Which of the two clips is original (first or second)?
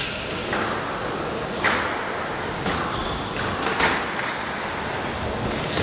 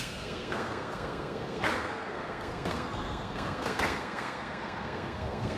first